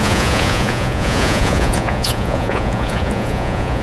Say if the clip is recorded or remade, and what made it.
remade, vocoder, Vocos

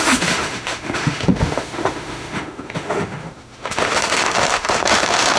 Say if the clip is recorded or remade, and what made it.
remade, autoencoder, DAC-VAE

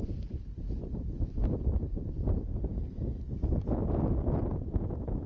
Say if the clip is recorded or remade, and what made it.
recorded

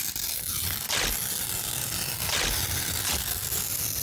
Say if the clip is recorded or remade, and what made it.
recorded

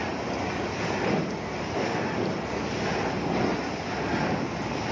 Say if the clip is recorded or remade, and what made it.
recorded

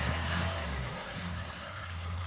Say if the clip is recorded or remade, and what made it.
remade, codec, SNAC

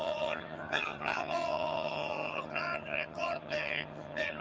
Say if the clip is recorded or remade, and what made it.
remade, vocoder, HiFi-GAN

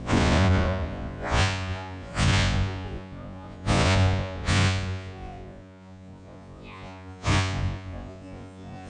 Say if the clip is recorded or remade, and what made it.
remade, vocoder, Vocos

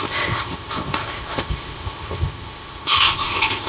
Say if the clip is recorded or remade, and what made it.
remade, codec, ZipCodec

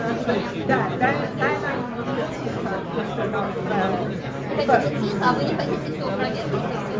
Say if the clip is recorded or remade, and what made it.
recorded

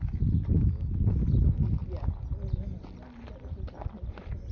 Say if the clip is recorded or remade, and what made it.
recorded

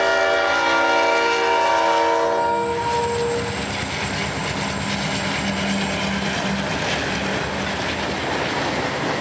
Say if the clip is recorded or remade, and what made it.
recorded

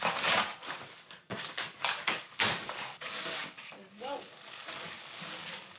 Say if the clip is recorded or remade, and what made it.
remade, codec, DAC